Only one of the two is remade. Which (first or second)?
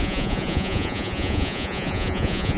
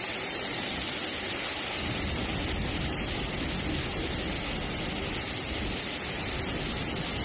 first